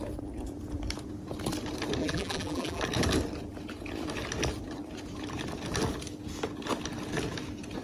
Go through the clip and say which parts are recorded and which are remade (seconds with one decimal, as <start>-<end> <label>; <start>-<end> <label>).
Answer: 0.0-2.0 recorded; 2.0-2.8 remade; 2.8-7.8 recorded

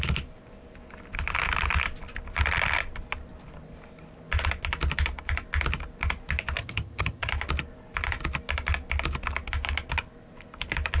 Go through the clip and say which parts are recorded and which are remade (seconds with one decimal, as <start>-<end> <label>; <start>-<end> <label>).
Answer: 0.0-6.6 recorded; 6.6-7.3 remade; 7.3-11.0 recorded

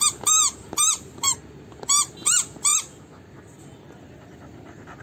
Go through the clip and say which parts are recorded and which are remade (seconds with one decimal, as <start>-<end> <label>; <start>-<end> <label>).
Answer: 0.0-5.0 recorded

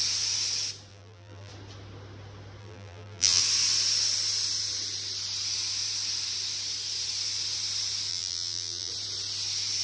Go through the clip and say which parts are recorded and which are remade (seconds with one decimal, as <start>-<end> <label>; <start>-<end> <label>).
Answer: 0.0-0.9 recorded; 0.9-1.5 remade; 1.5-2.6 recorded; 2.6-3.4 remade; 3.4-8.1 recorded; 8.1-8.9 remade; 8.9-9.8 recorded

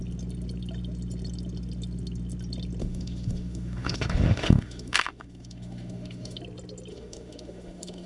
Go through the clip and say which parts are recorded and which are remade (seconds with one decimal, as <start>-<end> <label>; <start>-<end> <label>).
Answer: 0.0-2.8 recorded; 2.8-6.4 remade; 6.4-6.9 recorded; 6.9-8.1 remade

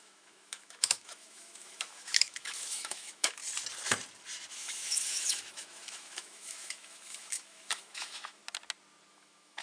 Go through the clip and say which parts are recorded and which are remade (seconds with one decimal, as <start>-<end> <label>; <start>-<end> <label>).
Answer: 0.0-3.4 remade; 3.4-4.5 recorded; 4.5-8.4 remade; 8.4-9.1 recorded; 9.1-9.6 remade

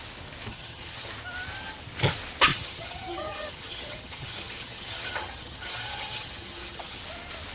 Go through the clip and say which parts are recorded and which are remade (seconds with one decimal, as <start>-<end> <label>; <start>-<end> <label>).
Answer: 0.0-0.5 recorded; 0.5-1.1 remade; 1.1-2.5 recorded; 2.5-7.0 remade; 7.0-7.5 recorded

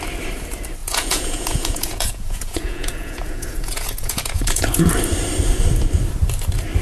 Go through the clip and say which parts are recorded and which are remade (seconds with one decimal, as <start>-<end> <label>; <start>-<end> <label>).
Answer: 0.0-0.8 recorded; 0.8-4.9 remade; 4.9-6.8 recorded